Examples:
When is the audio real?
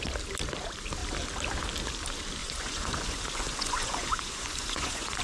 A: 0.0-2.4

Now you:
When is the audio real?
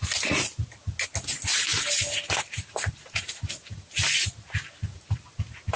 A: 0.0-5.8